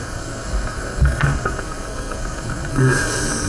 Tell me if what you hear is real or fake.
fake